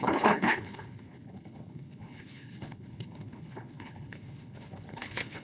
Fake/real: fake